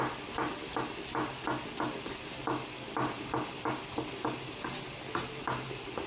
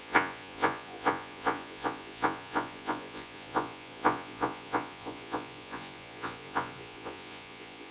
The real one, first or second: first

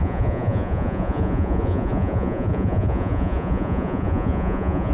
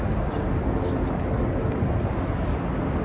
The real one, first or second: second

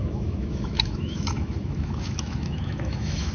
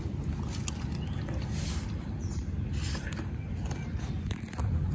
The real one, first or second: second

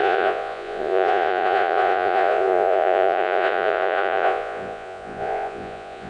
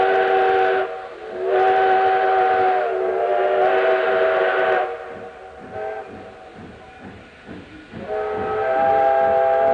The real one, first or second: second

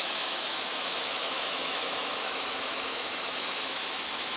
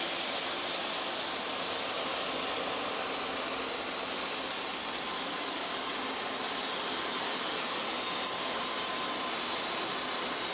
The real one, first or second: second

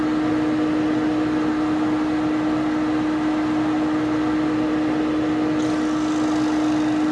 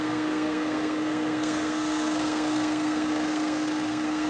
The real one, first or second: first